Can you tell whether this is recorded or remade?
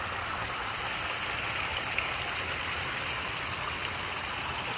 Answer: recorded